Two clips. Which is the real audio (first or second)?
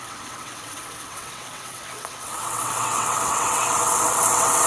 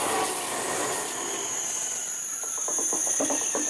second